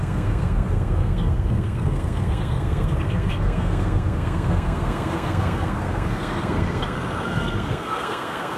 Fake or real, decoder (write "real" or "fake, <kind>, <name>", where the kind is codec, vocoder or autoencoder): fake, codec, SNAC